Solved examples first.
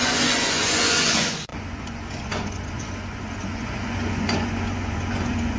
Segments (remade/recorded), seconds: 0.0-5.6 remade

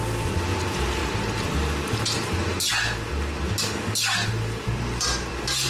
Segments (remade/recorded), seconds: 0.0-0.5 recorded; 0.5-1.1 remade; 1.1-5.7 recorded

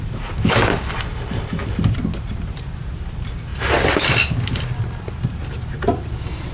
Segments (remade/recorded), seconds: 0.0-1.6 remade; 1.6-2.2 recorded; 2.2-3.5 remade; 3.5-5.1 recorded; 5.1-6.5 remade

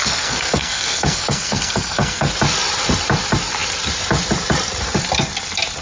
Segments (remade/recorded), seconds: 0.0-2.3 remade; 2.3-5.8 recorded

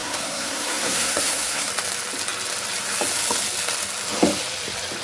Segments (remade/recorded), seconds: 0.0-1.7 remade; 1.7-5.0 recorded

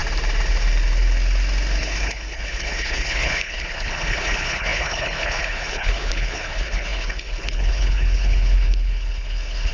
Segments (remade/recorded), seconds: 0.0-1.8 recorded; 1.8-9.7 remade

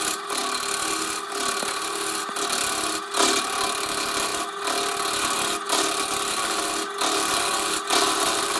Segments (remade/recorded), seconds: 0.0-8.6 recorded